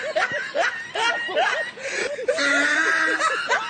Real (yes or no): yes